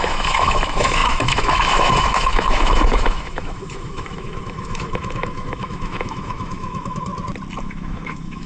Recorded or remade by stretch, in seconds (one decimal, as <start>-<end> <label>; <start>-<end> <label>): 0.0-7.1 remade; 7.1-7.6 recorded; 7.6-8.5 remade